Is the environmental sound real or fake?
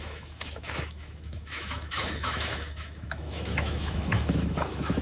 fake